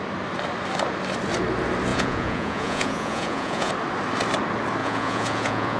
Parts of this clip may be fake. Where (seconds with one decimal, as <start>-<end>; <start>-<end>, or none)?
1.9-3.7; 4.8-5.8